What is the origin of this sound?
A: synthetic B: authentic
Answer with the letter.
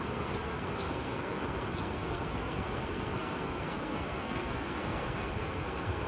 A